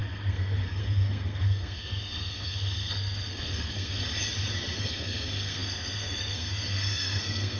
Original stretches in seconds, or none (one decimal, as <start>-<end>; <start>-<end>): 4.0-4.8

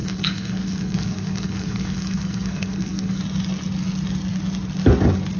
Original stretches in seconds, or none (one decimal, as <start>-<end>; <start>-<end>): 3.2-5.4